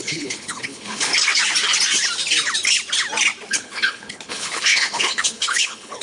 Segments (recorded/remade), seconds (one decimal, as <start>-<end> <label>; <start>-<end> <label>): 0.0-1.1 remade; 1.1-3.5 recorded; 3.5-6.0 remade